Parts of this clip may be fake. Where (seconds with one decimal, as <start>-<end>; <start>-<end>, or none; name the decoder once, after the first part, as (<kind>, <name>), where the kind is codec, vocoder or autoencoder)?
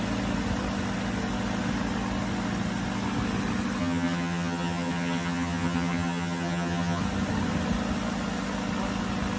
3.8-7.0 (vocoder, HiFi-GAN)